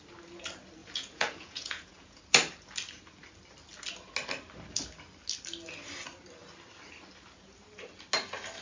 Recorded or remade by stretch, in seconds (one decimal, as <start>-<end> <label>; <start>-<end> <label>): 0.0-0.8 recorded; 0.8-2.2 remade; 2.2-8.6 recorded